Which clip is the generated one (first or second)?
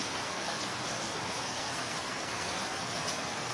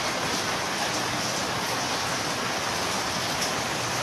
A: first